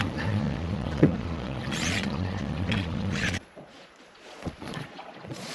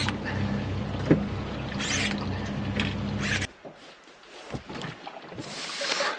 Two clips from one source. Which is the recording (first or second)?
second